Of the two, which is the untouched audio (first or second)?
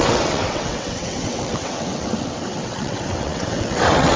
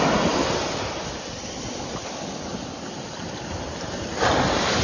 second